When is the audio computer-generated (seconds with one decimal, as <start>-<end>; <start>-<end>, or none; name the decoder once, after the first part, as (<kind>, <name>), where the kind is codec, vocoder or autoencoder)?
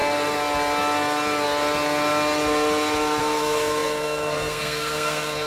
3.2-5.5 (codec, SNAC)